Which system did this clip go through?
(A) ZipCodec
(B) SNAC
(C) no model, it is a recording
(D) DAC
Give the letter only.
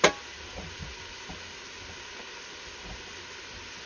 C